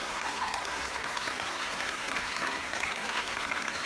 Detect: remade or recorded remade